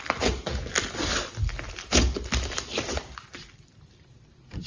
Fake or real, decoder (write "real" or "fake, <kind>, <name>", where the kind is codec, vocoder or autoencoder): real